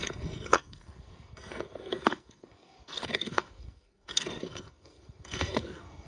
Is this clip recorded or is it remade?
remade